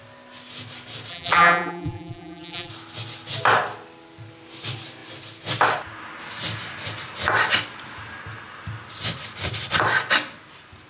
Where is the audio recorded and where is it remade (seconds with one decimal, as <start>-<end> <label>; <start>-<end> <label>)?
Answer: 0.0-1.1 recorded; 1.1-2.7 remade; 2.7-10.9 recorded